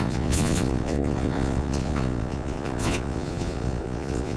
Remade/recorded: remade